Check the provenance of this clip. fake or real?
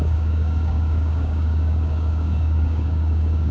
fake